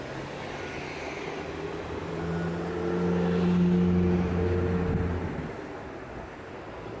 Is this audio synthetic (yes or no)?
no